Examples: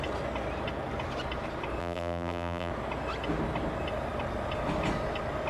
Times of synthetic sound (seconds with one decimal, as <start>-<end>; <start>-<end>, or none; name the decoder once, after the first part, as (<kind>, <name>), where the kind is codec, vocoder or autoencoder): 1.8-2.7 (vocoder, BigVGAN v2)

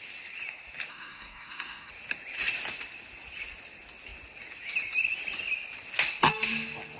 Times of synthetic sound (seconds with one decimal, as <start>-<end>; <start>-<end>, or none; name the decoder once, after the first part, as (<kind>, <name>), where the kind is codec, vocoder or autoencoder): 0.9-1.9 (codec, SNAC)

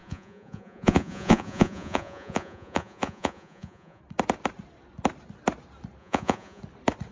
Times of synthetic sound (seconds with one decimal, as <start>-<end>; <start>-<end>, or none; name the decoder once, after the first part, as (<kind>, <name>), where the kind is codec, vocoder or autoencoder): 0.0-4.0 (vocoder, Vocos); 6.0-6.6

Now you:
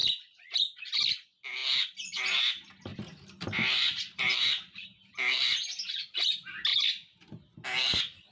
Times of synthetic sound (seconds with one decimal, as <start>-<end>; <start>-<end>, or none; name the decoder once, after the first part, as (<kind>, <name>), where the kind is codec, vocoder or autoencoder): 0.0-1.0 (vocoder, BigVGAN v2); 2.9-4.5

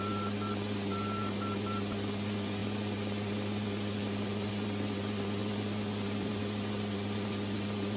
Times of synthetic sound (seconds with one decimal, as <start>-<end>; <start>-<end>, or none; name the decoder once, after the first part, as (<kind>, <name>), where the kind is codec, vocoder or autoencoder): 2.6-4.5 (vocoder, BigVGAN v2); 5.4-6.4

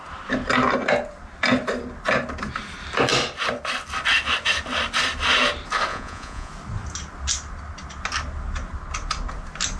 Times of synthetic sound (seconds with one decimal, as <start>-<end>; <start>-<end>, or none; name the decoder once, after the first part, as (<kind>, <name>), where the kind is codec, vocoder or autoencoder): 5.9-6.5 (vocoder, Vocos)

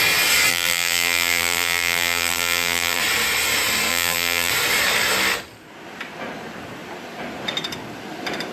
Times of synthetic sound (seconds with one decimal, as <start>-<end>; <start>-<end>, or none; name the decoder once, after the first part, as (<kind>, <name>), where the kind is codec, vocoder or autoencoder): 0.5-3.0 (vocoder, BigVGAN v2); 3.9-4.5